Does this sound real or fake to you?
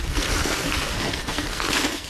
fake